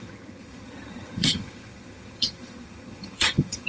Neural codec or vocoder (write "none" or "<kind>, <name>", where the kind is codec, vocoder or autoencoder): vocoder, HiFi-GAN